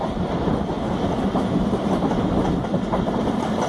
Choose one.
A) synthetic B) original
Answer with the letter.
B